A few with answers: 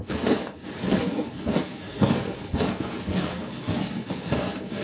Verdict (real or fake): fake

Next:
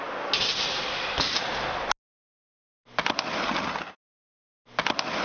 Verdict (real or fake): real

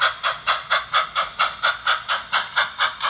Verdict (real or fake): real